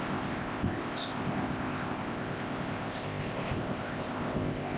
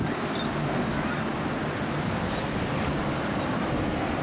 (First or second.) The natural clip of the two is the second